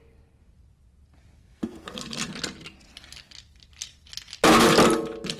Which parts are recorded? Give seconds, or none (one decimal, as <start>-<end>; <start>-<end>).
0.0-1.4; 2.3-5.4